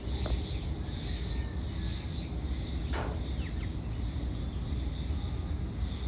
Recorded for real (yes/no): yes